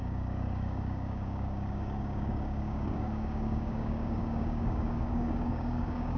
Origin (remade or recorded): remade